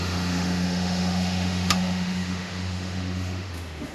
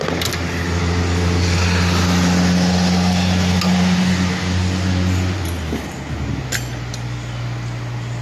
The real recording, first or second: second